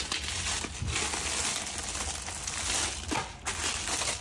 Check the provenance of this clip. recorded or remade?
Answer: recorded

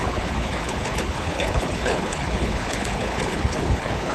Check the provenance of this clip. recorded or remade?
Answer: remade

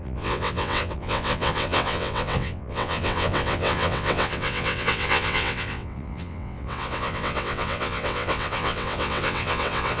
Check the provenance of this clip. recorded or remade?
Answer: remade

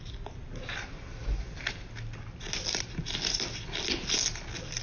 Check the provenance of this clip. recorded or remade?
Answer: recorded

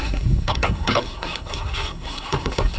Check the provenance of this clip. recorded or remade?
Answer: remade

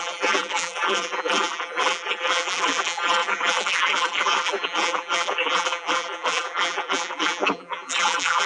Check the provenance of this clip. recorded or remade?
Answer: remade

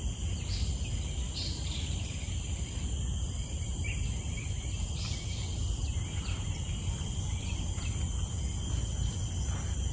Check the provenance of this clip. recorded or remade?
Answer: recorded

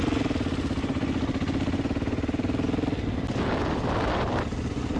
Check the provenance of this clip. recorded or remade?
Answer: recorded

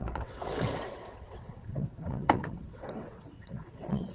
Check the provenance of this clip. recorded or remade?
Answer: remade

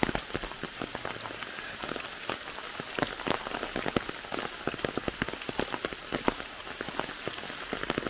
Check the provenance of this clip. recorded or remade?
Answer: recorded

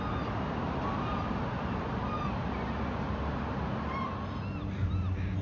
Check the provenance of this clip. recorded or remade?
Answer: recorded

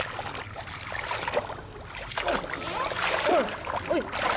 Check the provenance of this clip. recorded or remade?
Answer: recorded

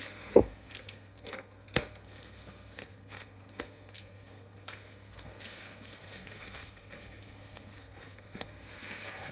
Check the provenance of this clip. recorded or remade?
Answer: remade